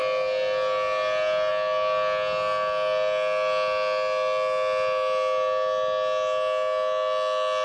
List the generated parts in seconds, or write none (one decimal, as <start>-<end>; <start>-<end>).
none